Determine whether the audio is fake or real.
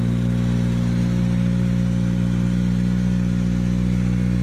real